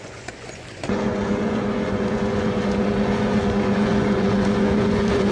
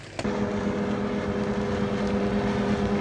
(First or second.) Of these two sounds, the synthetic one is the first